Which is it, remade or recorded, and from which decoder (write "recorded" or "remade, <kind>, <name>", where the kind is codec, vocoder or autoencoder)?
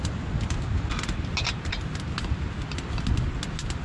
recorded